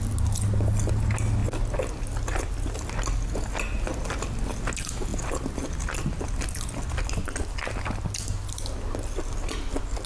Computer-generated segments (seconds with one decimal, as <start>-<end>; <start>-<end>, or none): none